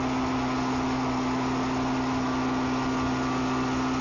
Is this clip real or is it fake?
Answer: real